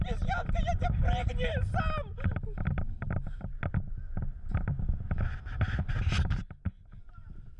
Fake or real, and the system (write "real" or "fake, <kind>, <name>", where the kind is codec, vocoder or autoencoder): real